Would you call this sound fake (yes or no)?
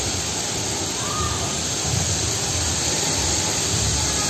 no